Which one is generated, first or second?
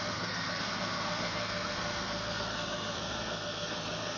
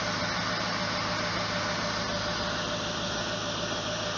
first